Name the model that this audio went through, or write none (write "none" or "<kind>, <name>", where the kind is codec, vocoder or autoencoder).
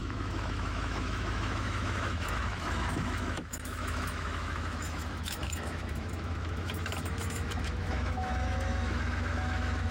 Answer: autoencoder, DAC-VAE